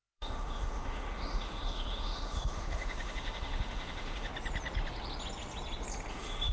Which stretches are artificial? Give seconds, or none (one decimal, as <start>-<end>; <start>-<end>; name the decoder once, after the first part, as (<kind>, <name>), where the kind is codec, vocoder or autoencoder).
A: 0.0-4.3 (autoencoder, DAC-VAE); 6.1-6.5